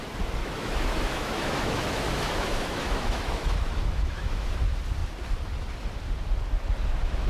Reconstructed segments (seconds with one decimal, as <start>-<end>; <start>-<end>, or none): 0.4-4.5